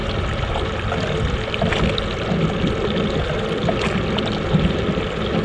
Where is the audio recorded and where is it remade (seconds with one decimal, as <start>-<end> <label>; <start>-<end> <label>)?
0.0-5.4 recorded